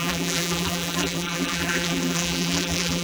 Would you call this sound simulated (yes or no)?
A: yes